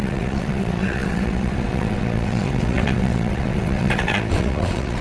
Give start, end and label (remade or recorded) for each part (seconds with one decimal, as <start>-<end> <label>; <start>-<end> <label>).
0.0-5.0 remade